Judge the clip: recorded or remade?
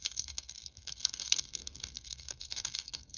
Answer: remade